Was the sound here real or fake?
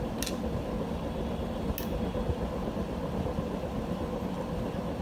real